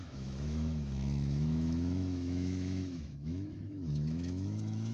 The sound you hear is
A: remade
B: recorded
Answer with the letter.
A